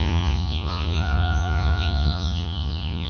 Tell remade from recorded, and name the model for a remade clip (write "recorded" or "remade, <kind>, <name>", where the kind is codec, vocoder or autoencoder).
remade, vocoder, Vocos